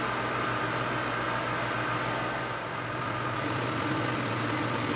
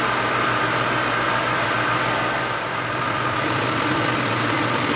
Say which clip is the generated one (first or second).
second